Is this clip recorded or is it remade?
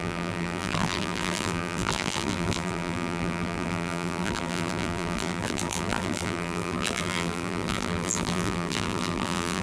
remade